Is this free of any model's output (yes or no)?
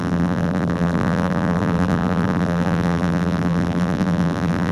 no